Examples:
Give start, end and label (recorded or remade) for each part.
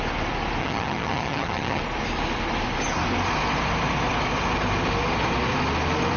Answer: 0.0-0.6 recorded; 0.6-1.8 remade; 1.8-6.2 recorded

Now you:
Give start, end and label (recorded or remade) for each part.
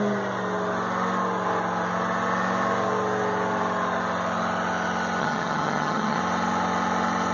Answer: 0.0-5.2 recorded; 5.2-6.2 remade; 6.2-7.3 recorded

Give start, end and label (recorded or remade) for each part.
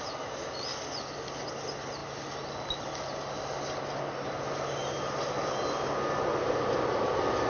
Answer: 0.0-7.5 recorded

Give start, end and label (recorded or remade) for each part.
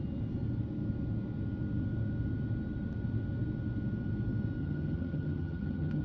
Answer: 0.0-4.6 recorded; 4.6-6.0 remade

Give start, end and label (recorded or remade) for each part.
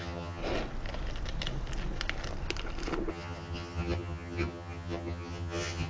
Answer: 0.0-0.4 remade; 0.4-3.1 recorded; 3.1-5.9 remade